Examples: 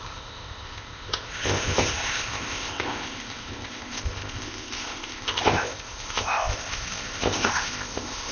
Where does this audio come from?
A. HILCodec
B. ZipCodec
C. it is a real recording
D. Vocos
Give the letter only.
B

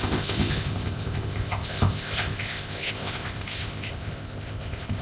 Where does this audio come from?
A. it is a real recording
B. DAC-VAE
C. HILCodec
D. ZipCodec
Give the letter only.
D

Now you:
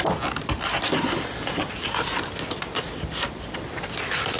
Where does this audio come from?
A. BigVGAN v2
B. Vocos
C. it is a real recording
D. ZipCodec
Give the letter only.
C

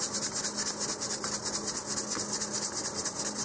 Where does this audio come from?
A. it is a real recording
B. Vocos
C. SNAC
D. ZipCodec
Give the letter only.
A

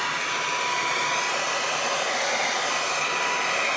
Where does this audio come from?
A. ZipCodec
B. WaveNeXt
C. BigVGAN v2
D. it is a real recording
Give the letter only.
D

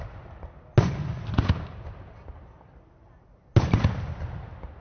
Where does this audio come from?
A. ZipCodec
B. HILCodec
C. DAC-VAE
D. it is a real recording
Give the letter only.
D